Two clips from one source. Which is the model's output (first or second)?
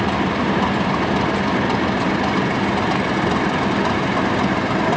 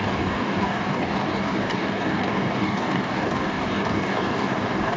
second